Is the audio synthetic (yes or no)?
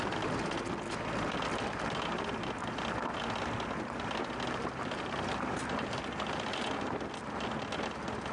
no